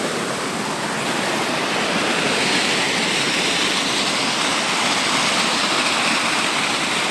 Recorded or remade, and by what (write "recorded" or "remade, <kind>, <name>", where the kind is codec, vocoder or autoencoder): recorded